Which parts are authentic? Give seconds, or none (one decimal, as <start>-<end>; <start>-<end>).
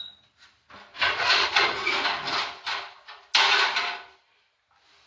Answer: 0.0-0.9; 2.0-5.1